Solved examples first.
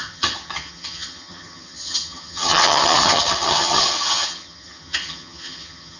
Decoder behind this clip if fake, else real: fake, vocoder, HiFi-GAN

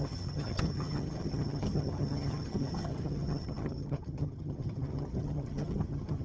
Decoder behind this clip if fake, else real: fake, vocoder, HiFi-GAN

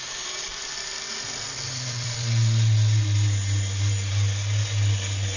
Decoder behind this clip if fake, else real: real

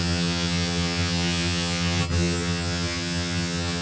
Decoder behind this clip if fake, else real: fake, vocoder, HiFi-GAN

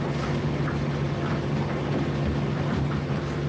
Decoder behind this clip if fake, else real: real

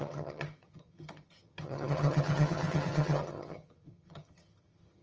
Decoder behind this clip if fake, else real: fake, vocoder, HiFi-GAN